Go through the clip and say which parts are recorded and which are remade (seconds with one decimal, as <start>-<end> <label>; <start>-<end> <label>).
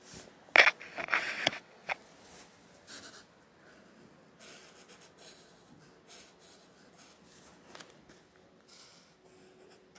0.0-1.0 recorded; 1.0-2.0 remade; 2.0-10.0 recorded